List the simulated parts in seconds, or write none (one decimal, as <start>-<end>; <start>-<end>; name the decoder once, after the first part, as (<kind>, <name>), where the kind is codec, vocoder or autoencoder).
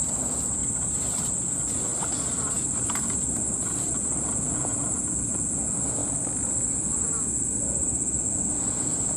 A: 0.0-0.6 (vocoder, Vocos); 1.3-1.9; 3.8-6.0; 6.8-9.2